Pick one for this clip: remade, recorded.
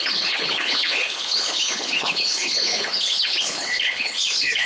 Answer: remade